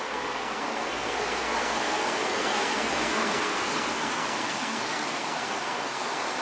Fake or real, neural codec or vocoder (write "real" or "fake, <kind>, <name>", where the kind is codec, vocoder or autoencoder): fake, codec, SNAC